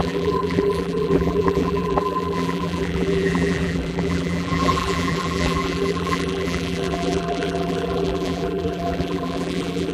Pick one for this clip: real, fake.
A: fake